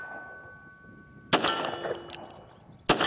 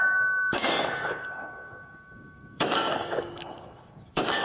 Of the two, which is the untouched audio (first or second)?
first